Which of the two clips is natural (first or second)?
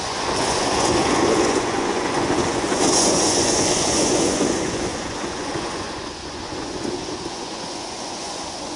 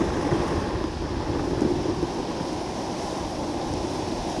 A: second